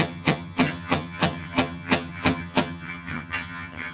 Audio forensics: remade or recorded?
remade